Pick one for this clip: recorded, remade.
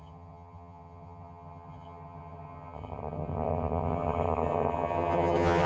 remade